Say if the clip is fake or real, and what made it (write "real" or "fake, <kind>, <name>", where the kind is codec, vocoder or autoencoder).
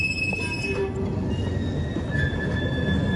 real